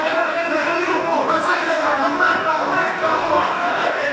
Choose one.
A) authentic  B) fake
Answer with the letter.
B